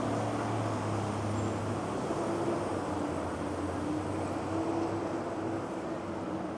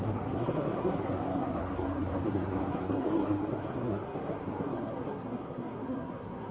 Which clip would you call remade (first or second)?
second